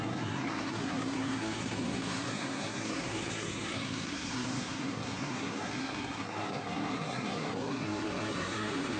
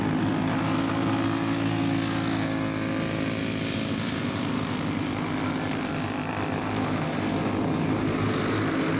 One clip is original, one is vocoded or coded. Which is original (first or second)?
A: second